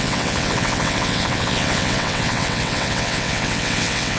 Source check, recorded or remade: remade